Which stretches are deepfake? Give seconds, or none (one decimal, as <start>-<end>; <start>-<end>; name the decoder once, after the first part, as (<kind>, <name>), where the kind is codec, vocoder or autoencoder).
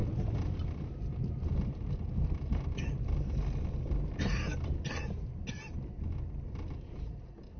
none